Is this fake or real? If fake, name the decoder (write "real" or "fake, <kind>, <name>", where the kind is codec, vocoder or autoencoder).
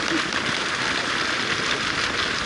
real